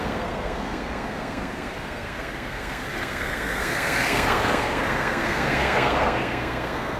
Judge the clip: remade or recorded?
remade